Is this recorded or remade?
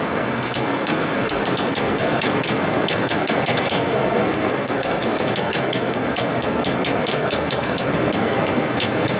remade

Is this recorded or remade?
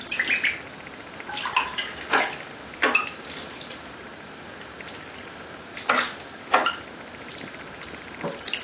recorded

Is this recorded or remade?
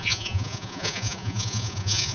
remade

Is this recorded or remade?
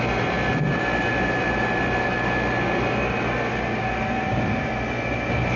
recorded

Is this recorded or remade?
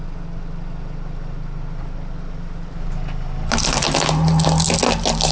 recorded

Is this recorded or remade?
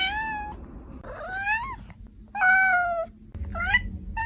recorded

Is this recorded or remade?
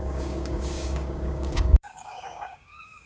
remade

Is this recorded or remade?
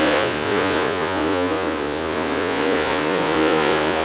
remade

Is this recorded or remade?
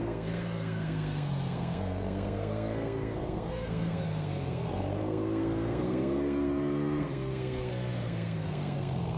remade